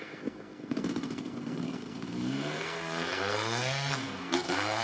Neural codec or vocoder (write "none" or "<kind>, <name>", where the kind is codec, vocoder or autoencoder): codec, SNAC